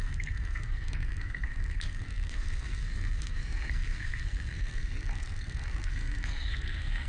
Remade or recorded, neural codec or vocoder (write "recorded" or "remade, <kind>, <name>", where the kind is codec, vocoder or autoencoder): remade, codec, SNAC